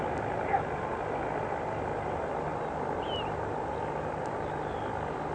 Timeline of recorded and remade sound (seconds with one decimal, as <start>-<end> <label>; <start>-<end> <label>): 0.0-5.3 recorded